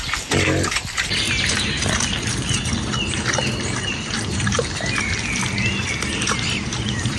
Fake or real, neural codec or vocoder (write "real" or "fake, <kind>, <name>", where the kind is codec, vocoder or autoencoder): real